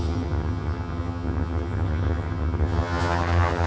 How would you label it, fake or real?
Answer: fake